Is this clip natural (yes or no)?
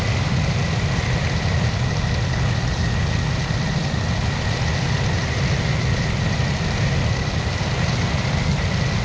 yes